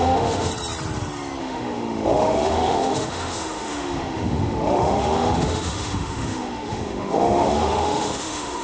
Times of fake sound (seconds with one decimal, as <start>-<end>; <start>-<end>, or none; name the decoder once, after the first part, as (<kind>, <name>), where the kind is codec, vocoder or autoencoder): 0.0-0.5 (autoencoder, DAC-VAE); 1.4-8.6